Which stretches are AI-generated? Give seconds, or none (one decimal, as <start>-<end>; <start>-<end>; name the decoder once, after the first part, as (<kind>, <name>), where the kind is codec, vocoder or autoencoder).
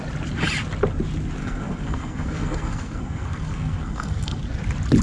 1.4-4.4 (codec, SNAC)